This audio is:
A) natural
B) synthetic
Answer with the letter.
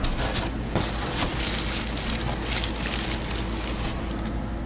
A